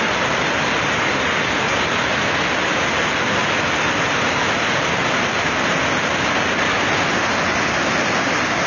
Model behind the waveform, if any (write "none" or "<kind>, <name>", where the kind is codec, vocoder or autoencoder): none